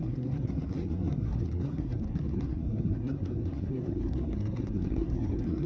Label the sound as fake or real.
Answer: fake